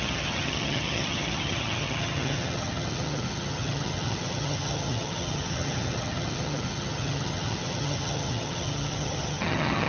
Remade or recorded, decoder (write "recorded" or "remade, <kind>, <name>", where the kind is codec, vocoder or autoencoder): remade, vocoder, HiFi-GAN